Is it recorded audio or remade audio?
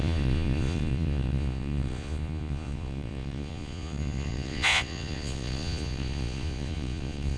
remade